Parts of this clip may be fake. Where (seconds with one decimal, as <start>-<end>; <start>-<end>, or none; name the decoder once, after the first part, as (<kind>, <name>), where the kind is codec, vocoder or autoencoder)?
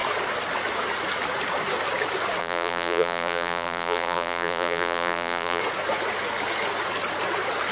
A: 2.4-5.6 (vocoder, BigVGAN v2)